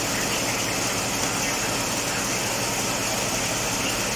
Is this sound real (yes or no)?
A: yes